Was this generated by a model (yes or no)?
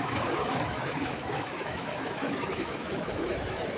yes